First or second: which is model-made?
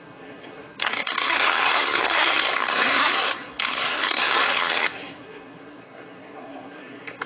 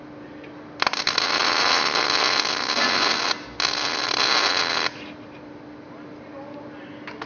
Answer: first